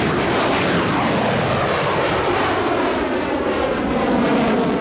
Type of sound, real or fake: real